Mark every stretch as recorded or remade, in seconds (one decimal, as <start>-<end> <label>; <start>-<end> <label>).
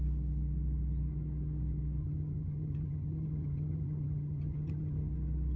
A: 0.0-2.0 recorded; 2.0-5.1 remade; 5.1-5.6 recorded